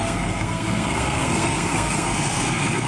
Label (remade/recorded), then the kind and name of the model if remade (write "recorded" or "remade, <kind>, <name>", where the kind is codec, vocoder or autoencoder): remade, codec, SNAC